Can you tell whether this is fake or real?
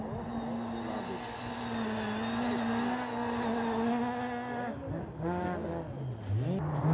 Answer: real